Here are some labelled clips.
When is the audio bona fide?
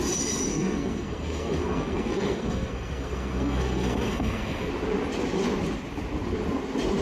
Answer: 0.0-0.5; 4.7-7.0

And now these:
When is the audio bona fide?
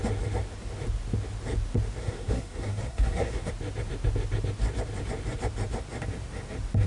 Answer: 0.0-2.0; 3.5-6.9